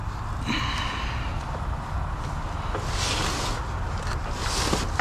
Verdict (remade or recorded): recorded